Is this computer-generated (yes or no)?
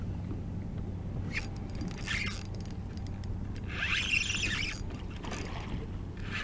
no